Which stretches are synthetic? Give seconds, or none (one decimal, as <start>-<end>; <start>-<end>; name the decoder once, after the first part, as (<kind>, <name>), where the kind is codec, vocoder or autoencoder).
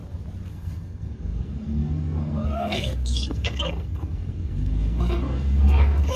0.5-6.2 (codec, SNAC)